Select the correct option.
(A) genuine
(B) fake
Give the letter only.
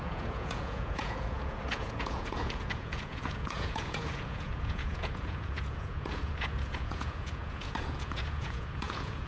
B